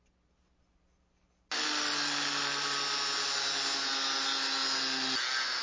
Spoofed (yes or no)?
no